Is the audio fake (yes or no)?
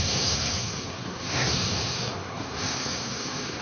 yes